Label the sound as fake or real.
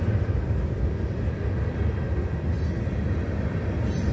real